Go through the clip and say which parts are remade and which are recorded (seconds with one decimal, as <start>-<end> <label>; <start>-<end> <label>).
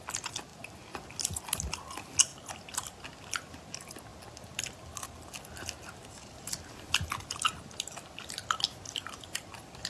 0.0-9.9 recorded